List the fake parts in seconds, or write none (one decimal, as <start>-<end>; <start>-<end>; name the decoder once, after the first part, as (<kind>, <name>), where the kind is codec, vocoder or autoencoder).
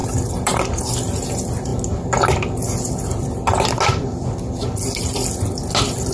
0.0-0.6 (vocoder, BigVGAN v2)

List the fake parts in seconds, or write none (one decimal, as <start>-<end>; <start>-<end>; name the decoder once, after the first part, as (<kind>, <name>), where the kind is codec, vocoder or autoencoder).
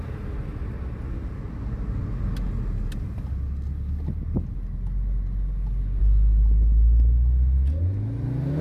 none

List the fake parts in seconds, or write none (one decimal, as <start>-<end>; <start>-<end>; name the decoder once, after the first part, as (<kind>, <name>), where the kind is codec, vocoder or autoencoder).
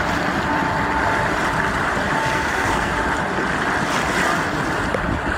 2.2-2.9 (codec, SNAC)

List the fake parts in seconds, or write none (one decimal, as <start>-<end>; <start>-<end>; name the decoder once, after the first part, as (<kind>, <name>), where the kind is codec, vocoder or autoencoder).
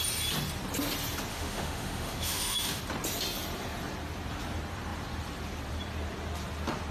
1.3-2.8 (autoencoder, DAC-VAE)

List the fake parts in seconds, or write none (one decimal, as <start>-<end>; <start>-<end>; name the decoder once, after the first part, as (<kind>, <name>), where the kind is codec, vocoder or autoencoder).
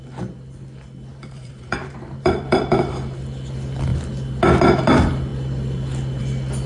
1.1-2.9 (vocoder, BigVGAN v2)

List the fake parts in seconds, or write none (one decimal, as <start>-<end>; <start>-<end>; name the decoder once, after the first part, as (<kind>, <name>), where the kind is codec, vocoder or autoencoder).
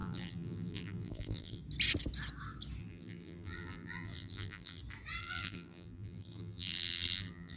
0.0-1.6 (vocoder, BigVGAN v2); 2.8-4.8; 5.2-7.6